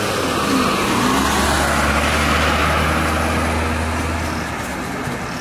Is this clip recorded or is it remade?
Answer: recorded